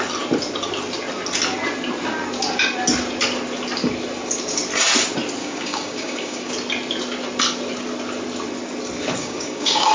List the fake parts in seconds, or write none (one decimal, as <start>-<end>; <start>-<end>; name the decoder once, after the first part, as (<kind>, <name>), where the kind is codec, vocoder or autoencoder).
5.4-6.5 (codec, DAC); 9.2-9.9